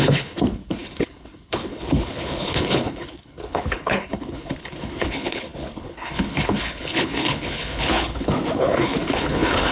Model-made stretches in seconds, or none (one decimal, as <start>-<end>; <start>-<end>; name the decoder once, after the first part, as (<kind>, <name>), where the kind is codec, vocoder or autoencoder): 0.0-9.7 (codec, HILCodec)